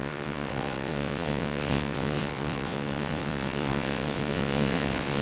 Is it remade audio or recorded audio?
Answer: remade